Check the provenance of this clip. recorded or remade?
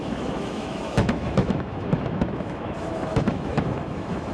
remade